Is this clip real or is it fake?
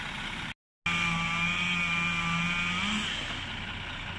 real